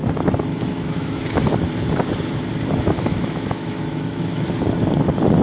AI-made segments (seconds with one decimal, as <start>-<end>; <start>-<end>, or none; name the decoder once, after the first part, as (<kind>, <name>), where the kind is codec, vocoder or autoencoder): 0.5-1.2 (autoencoder, DAC-VAE); 3.1-4.5